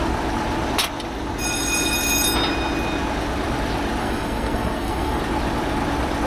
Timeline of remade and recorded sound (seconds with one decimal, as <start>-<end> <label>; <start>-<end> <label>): 0.0-4.0 recorded; 4.0-5.2 remade; 5.2-6.3 recorded